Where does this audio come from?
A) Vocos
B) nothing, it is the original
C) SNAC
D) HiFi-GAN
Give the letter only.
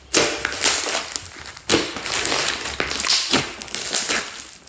B